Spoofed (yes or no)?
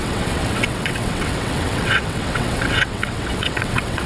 yes